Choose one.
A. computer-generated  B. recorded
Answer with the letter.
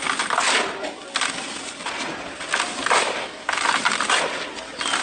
B